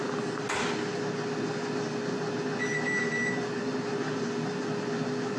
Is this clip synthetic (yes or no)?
no